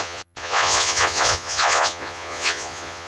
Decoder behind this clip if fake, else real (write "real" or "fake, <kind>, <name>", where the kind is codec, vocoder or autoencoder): fake, vocoder, Vocos